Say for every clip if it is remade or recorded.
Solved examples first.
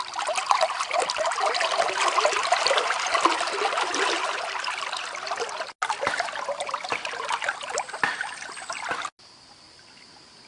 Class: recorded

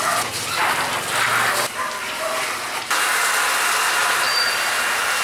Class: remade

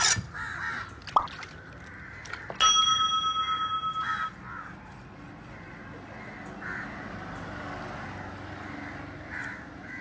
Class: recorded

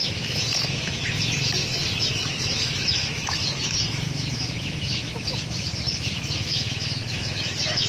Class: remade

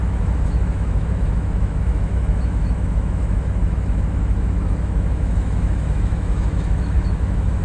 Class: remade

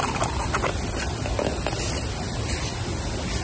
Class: recorded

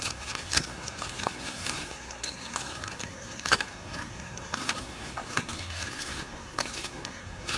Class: remade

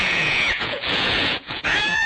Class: remade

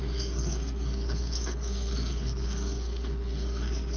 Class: remade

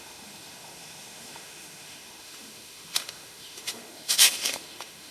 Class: remade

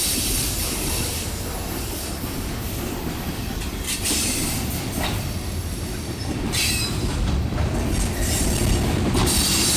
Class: remade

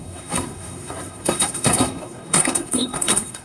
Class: remade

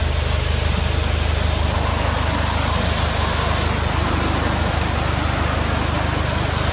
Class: recorded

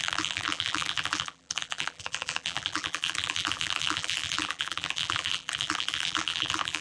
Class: remade